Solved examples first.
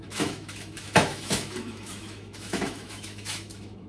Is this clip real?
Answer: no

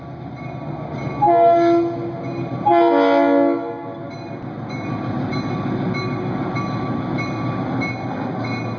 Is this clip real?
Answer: yes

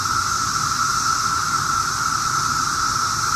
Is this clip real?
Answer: yes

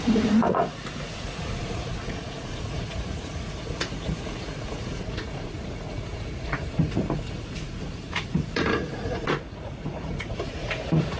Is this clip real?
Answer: no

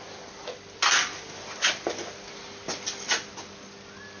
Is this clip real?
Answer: yes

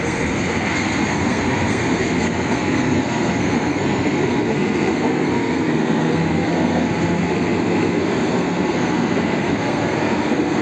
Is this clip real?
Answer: no